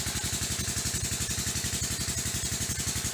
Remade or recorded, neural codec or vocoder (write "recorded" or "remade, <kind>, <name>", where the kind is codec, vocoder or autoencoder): recorded